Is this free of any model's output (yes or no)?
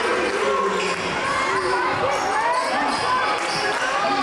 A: yes